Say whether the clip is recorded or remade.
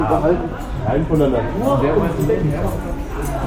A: recorded